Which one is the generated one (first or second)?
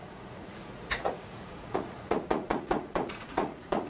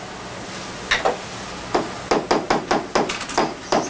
first